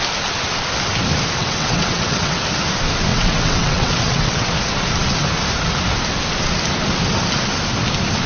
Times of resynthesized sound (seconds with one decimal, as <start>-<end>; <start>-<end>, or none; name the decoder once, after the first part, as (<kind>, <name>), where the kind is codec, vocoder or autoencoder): 1.4-2.4 (vocoder, WaveNeXt); 3.1-4.5